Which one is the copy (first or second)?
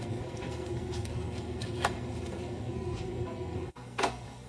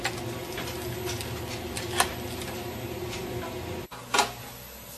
first